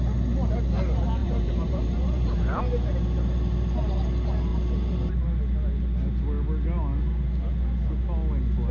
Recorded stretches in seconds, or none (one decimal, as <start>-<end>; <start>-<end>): 0.0-1.2; 2.6-8.7